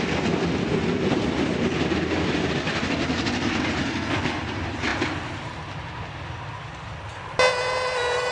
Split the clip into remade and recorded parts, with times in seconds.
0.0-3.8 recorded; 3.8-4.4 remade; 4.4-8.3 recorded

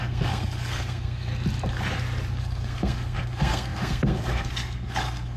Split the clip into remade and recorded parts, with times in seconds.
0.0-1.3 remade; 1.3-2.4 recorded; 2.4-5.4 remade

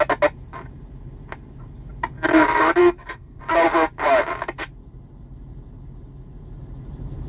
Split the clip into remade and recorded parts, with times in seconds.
0.0-2.8 recorded; 2.8-3.4 remade; 3.4-7.3 recorded

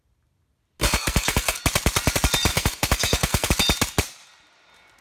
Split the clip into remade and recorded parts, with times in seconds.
0.0-0.8 recorded; 0.8-1.6 remade; 1.6-2.5 recorded; 2.5-3.5 remade; 3.5-5.0 recorded

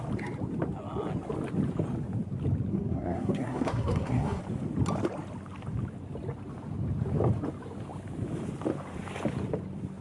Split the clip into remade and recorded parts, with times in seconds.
0.0-2.7 recorded; 2.7-4.4 remade; 4.4-10.0 recorded

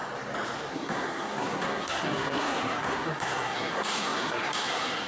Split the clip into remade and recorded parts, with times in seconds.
0.0-0.7 recorded; 0.7-5.1 remade

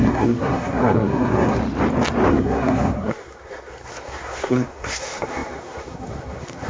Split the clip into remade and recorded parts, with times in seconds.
0.0-1.6 remade; 1.6-2.3 recorded; 2.3-6.7 remade